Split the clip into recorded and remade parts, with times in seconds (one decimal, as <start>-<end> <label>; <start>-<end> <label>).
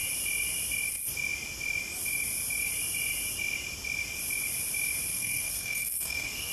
0.0-5.1 recorded; 5.1-6.5 remade